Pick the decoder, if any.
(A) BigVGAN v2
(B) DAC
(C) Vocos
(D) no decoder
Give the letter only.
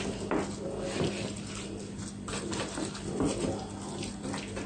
D